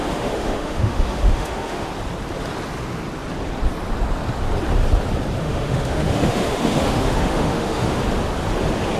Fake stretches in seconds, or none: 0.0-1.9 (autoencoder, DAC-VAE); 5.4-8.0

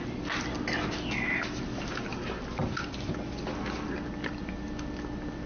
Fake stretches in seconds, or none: none

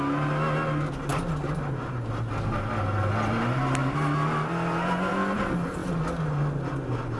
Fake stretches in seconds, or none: none

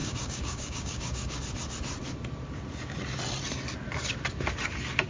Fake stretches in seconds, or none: 0.0-1.4 (codec, DAC)

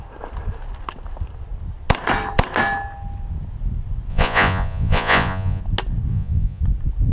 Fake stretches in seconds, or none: 4.1-5.6 (vocoder, Vocos); 6.1-6.6